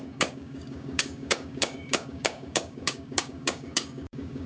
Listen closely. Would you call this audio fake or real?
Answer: fake